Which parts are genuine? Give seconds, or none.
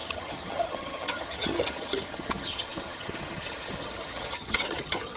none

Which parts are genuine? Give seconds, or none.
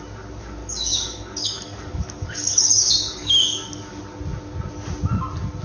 0.0-0.6; 4.0-5.6